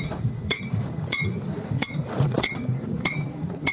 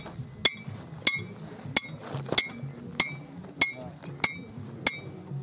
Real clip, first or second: second